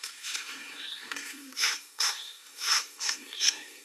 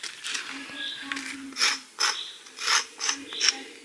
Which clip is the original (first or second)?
second